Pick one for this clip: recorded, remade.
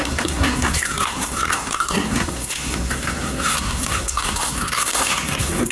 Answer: remade